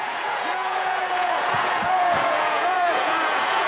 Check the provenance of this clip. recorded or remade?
remade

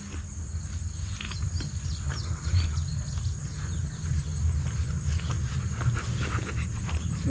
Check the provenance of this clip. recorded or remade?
recorded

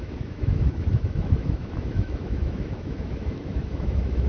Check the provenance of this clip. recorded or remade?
remade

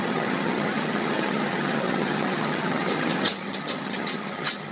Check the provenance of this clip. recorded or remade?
remade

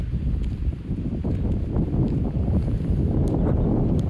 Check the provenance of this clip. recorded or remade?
recorded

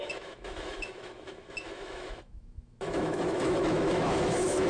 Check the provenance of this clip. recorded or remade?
remade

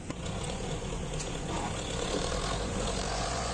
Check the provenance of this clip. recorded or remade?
remade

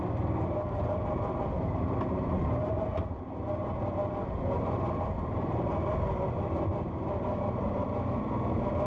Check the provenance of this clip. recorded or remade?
recorded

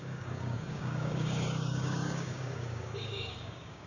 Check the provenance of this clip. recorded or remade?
remade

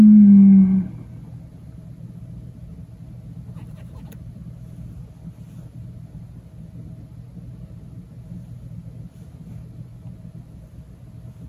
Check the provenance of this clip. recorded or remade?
recorded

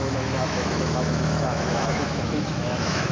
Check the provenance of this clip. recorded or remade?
remade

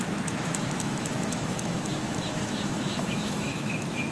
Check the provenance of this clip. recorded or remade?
remade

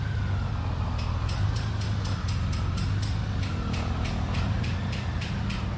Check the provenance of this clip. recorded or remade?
recorded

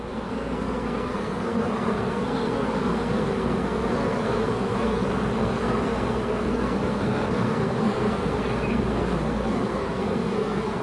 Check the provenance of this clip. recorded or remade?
remade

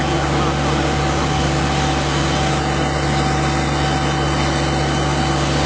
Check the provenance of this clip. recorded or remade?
recorded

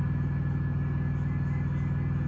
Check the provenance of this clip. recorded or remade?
recorded